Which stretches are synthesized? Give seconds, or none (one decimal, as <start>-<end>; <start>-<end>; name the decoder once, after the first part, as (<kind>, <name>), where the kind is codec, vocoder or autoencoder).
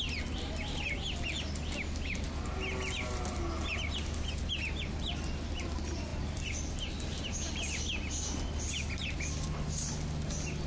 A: none